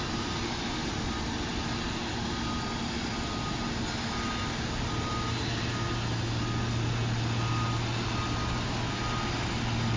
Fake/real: real